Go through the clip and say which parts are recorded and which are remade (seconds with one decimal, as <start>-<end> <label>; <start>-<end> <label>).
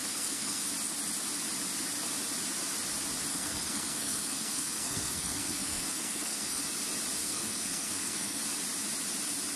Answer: 0.0-0.7 remade; 0.7-3.3 recorded; 3.3-6.6 remade; 6.6-7.2 recorded; 7.2-8.4 remade; 8.4-9.6 recorded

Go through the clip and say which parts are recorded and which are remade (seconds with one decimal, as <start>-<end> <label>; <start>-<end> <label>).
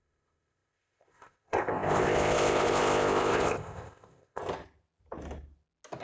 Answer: 0.0-4.4 remade; 4.4-6.0 recorded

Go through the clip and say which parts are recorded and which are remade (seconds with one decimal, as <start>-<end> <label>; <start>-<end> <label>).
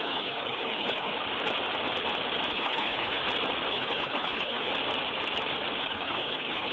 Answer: 0.0-1.1 remade; 1.1-2.5 recorded; 2.5-3.2 remade; 3.2-3.7 recorded; 3.7-4.7 remade; 4.7-5.8 recorded; 5.8-6.7 remade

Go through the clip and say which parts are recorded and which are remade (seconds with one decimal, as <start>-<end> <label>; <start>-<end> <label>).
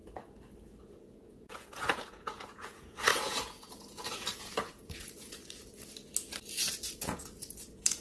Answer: 0.0-0.8 recorded; 0.8-5.4 remade; 5.4-7.0 recorded; 7.0-8.0 remade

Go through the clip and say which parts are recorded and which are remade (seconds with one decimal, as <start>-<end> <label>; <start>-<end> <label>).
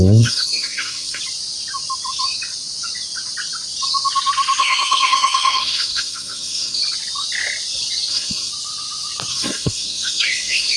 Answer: 0.0-1.2 remade; 1.2-4.6 recorded; 4.6-6.8 remade; 6.8-8.1 recorded; 8.1-8.5 remade; 8.5-9.3 recorded; 9.3-10.8 remade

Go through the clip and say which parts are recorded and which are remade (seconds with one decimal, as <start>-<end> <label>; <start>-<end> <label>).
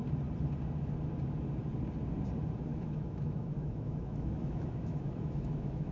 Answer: 0.0-2.7 recorded; 2.7-5.9 remade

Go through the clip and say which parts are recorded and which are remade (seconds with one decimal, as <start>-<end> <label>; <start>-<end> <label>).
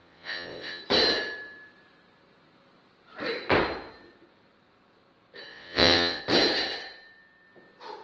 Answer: 0.0-0.8 remade; 0.8-5.5 recorded; 5.5-6.2 remade; 6.2-8.0 recorded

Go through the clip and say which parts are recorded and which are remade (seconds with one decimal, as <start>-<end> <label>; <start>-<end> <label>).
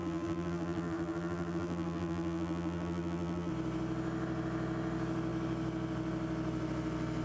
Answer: 0.0-3.5 remade; 3.5-7.2 recorded